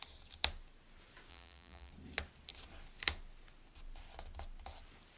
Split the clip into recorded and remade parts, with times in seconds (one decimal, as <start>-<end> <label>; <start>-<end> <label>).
0.0-1.3 recorded; 1.3-1.9 remade; 1.9-5.2 recorded